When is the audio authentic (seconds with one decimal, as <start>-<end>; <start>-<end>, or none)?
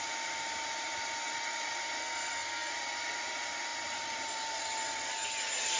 0.0-2.0; 2.7-5.8